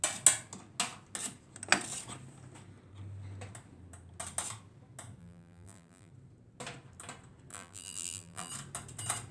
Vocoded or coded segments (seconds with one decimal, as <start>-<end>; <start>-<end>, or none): 5.2-6.1; 7.5-8.5